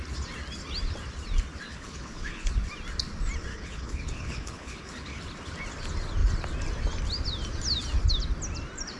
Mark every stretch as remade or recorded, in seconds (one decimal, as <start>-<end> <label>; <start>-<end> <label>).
0.0-1.7 recorded; 1.7-2.5 remade; 2.5-3.5 recorded; 3.5-5.2 remade; 5.2-9.0 recorded